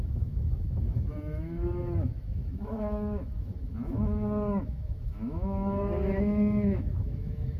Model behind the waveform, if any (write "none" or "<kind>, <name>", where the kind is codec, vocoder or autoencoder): autoencoder, DAC-VAE